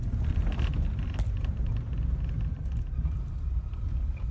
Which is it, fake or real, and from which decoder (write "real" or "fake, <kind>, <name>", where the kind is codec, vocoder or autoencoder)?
real